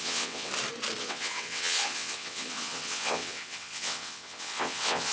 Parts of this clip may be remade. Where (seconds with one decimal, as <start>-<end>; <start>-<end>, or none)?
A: 0.0-0.5; 1.0-5.1